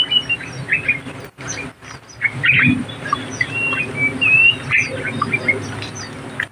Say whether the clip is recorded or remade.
recorded